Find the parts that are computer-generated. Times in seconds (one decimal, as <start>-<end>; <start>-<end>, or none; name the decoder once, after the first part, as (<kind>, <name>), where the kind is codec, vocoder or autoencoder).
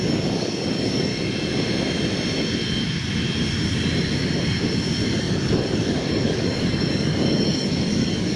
0.0-1.1 (codec, DAC); 5.2-8.4